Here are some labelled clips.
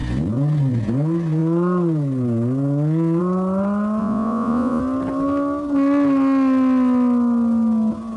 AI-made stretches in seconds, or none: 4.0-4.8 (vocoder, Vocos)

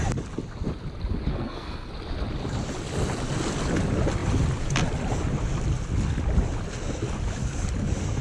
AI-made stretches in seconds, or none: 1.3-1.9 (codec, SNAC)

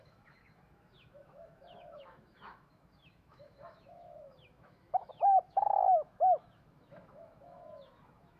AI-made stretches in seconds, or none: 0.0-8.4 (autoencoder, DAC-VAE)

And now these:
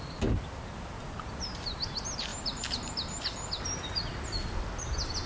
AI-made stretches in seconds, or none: 2.3-2.9 (vocoder, BigVGAN v2)